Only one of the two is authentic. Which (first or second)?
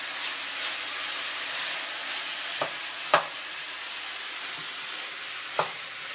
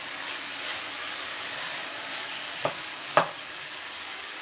first